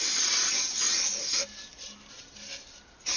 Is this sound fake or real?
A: real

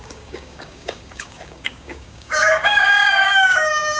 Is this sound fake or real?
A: fake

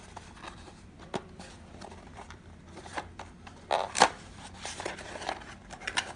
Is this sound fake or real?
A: fake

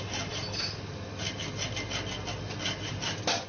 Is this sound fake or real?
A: real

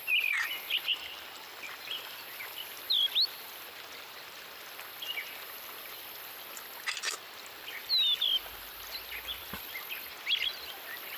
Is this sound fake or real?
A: real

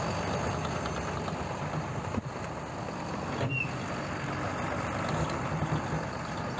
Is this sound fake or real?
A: real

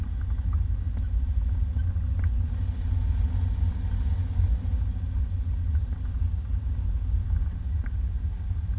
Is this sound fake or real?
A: real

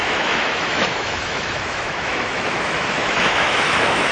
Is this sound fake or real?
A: fake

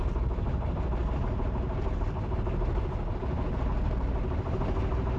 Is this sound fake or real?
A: real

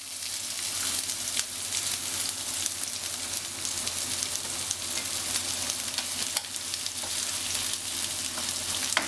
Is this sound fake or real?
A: real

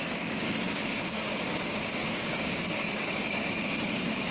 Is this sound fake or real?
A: fake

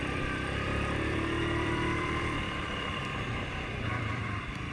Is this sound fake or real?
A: fake